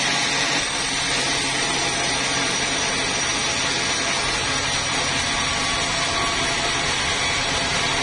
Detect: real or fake real